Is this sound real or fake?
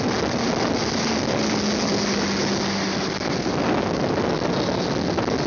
real